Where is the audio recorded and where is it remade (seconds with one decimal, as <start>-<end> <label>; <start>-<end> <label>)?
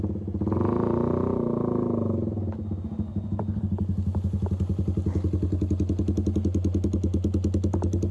0.0-8.1 recorded